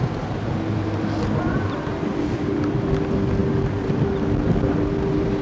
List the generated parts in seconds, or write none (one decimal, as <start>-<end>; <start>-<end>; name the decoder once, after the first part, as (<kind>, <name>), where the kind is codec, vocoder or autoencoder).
none